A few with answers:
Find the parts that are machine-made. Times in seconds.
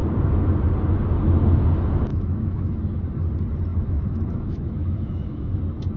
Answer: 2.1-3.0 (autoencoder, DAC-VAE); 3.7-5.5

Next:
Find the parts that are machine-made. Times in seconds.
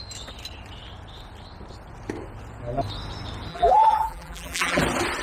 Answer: 3.5-4.8 (vocoder, BigVGAN v2)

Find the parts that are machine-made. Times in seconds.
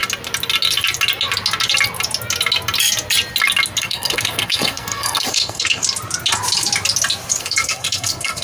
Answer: 3.8-5.8 (codec, SNAC); 7.4-8.4